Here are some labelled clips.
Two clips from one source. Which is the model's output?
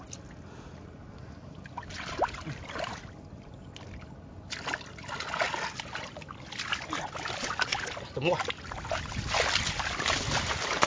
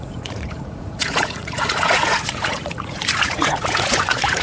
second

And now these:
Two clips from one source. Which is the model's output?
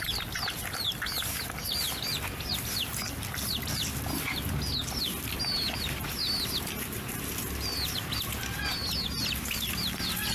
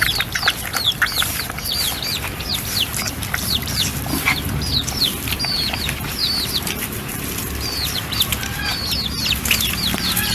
second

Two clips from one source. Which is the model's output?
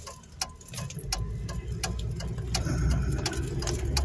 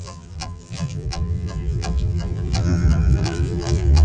second